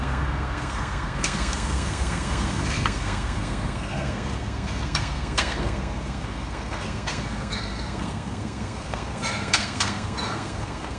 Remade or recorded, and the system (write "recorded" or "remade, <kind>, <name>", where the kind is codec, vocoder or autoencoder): remade, codec, SNAC